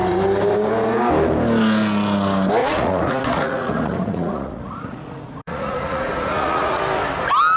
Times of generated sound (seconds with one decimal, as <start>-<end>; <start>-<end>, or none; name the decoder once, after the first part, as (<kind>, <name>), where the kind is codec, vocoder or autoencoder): 2.6-6.8 (vocoder, Vocos)